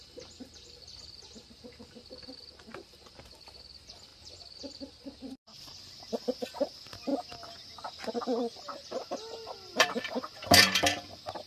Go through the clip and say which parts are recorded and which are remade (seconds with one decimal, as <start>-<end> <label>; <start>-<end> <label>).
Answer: 0.0-7.1 remade; 7.1-9.0 recorded; 9.0-11.5 remade